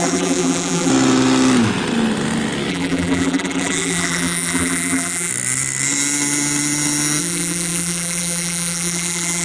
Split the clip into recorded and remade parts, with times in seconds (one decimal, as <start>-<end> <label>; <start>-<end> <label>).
0.0-0.9 remade; 0.9-2.7 recorded; 2.7-5.3 remade; 5.3-7.2 recorded; 7.2-9.4 remade